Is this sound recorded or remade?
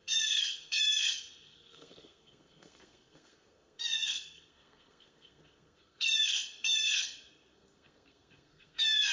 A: remade